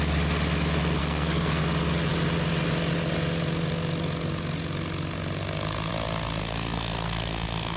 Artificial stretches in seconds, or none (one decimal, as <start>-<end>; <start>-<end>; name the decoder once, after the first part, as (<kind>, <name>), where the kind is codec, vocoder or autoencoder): 1.0-1.6 (codec, SNAC); 6.4-7.8